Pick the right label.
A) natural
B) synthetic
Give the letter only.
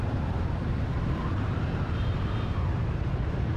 B